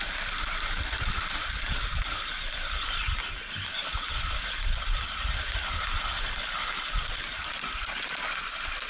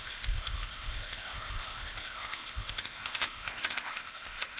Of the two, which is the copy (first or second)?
second